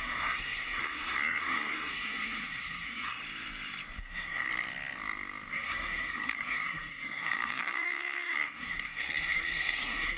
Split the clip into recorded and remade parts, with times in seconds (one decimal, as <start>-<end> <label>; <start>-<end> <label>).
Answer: 0.0-3.2 remade; 3.2-4.0 recorded; 4.0-4.5 remade; 4.5-5.5 recorded; 5.5-10.2 remade